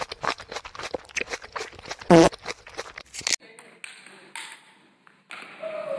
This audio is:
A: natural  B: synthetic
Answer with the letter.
A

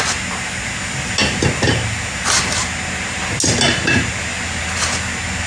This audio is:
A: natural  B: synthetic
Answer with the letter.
A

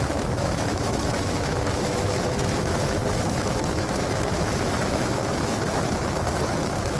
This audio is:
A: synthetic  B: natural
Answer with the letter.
A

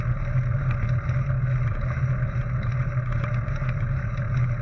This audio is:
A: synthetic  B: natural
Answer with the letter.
B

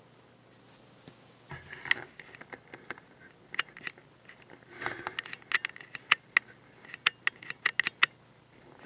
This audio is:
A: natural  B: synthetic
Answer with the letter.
A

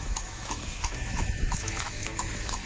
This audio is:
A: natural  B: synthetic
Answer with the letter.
B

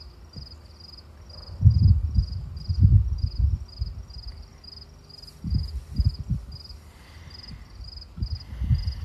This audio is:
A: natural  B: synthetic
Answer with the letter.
A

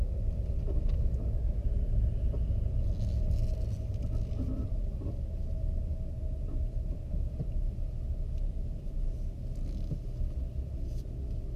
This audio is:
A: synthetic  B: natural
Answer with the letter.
B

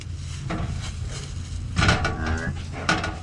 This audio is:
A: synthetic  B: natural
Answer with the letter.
B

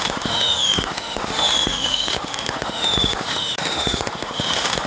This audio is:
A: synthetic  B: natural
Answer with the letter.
A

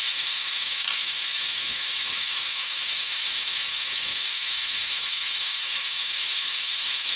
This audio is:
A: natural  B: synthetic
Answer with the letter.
B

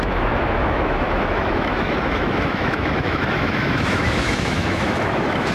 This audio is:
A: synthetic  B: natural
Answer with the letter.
A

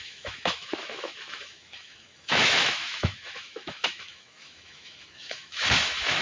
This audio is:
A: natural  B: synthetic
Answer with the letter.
B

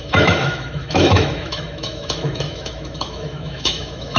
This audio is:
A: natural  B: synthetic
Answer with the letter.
B